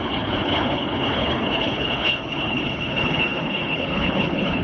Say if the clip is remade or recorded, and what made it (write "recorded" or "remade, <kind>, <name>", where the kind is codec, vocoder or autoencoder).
remade, codec, HILCodec